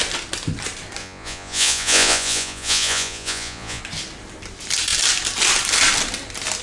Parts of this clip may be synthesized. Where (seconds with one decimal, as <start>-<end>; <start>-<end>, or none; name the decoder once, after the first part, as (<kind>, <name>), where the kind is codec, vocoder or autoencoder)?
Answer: 1.0-3.8 (vocoder, Vocos)